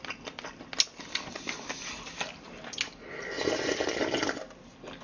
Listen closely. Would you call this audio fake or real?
real